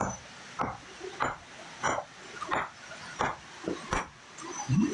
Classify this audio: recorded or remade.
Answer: recorded